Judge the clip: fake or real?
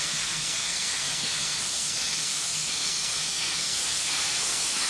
fake